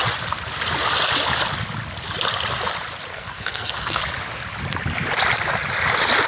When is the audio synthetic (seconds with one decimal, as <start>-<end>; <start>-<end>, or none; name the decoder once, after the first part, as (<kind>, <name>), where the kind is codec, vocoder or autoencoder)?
3.1-4.0 (codec, SNAC)